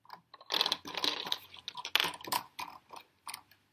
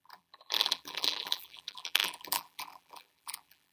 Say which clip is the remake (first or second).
second